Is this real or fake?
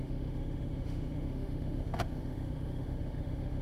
fake